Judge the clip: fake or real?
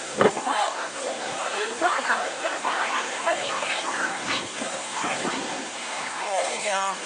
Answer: fake